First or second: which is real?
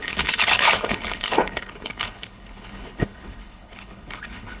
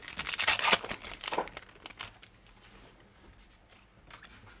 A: second